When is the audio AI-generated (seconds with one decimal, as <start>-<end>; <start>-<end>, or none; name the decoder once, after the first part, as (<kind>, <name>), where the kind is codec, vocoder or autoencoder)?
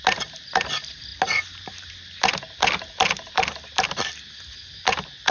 none